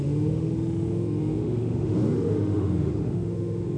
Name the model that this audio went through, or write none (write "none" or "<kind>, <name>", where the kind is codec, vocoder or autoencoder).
autoencoder, DAC-VAE